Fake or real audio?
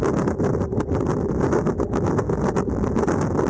real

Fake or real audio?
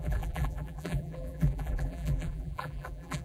fake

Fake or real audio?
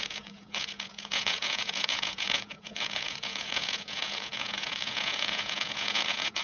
fake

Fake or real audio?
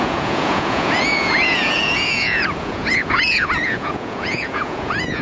fake